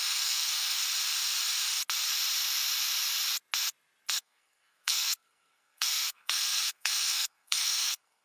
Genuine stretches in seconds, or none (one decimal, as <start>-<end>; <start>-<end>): 0.8-4.1